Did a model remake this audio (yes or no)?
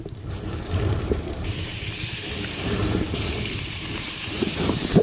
yes